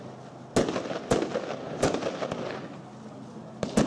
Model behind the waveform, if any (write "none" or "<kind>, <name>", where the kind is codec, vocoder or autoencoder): none